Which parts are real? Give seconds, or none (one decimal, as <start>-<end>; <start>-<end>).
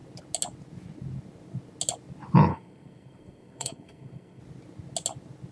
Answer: 0.0-2.5; 4.4-5.5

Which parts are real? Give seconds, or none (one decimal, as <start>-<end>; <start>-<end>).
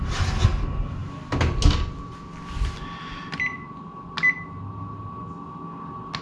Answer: 0.0-6.2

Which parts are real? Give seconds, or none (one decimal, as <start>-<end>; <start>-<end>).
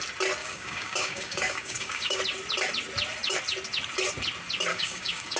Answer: 0.0-0.4; 2.2-4.7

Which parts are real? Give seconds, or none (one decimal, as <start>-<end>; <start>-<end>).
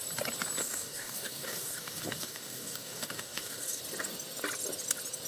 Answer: 0.0-0.6; 3.8-5.3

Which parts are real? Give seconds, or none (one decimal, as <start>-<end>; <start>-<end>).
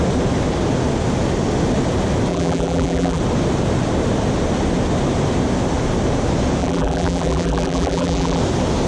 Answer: 0.0-2.3; 3.2-6.6; 8.4-8.9